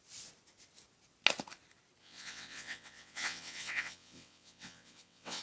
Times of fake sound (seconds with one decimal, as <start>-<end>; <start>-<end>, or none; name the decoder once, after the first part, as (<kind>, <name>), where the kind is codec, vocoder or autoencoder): 2.0-5.4 (vocoder, WaveNeXt)

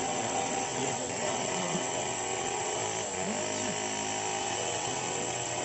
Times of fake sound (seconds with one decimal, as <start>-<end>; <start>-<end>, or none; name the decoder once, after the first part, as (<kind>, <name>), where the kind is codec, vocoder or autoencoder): 0.0-2.8 (vocoder, WaveNeXt); 4.4-5.6

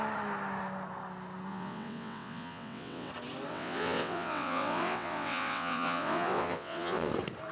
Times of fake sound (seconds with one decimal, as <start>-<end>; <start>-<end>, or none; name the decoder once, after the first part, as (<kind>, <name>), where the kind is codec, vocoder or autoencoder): 1.5-3.1 (vocoder, WaveNeXt); 3.5-7.1

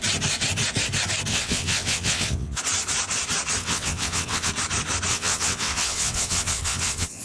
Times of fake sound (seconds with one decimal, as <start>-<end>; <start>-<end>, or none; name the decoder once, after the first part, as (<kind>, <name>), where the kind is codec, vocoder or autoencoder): 1.3-2.6 (vocoder, WaveNeXt); 3.6-4.5; 5.1-7.2

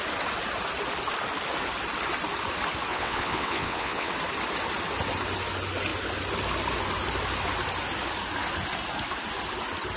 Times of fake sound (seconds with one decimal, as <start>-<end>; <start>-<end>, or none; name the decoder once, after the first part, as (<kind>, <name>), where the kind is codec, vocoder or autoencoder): 2.9-4.1 (vocoder, WaveNeXt)

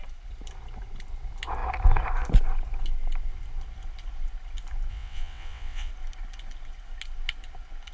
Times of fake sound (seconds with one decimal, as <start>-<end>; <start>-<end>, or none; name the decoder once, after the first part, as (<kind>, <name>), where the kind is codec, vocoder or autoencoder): 4.9-5.9 (vocoder, WaveNeXt)